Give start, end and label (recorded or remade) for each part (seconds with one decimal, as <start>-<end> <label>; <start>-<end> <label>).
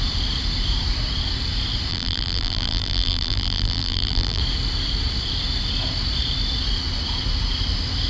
0.0-1.9 recorded; 1.9-4.4 remade; 4.4-8.1 recorded